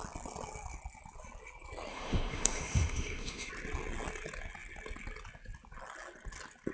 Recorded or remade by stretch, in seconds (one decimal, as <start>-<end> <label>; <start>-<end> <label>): 0.0-1.9 recorded; 1.9-3.5 remade; 3.5-6.7 recorded